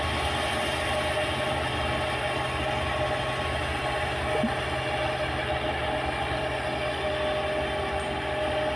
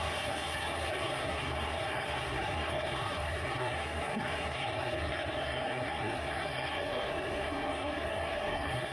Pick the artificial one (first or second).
second